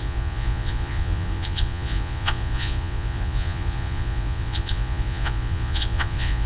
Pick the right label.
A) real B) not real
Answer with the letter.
B